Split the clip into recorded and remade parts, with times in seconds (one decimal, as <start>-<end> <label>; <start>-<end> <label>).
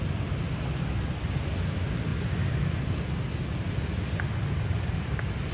0.0-5.5 recorded